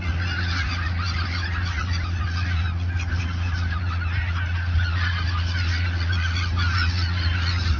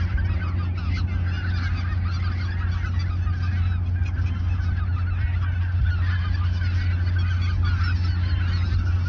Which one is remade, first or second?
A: first